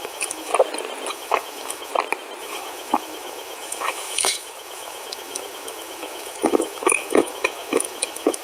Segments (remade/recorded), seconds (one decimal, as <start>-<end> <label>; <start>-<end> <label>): 0.0-0.5 remade; 0.5-1.1 recorded; 1.1-1.9 remade; 1.9-2.4 recorded; 2.4-8.4 remade